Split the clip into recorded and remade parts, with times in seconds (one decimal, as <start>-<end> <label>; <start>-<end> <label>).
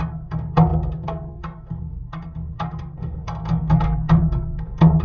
0.0-5.0 remade